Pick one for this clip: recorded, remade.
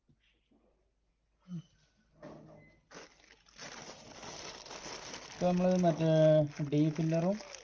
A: recorded